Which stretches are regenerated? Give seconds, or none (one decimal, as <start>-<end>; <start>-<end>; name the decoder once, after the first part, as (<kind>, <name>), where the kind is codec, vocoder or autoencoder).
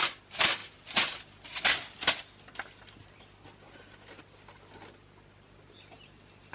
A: none